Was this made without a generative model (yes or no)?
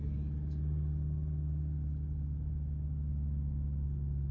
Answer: yes